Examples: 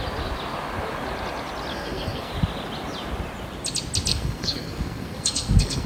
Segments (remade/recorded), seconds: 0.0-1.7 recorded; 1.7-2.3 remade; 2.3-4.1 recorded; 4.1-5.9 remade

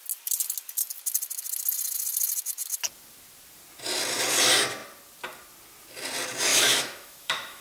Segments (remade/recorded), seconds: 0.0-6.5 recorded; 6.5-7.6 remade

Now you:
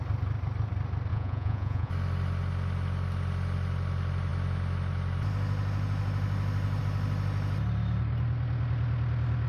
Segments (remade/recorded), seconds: 0.0-1.1 recorded; 1.1-1.9 remade; 1.9-9.5 recorded